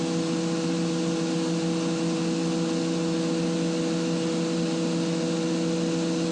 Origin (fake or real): real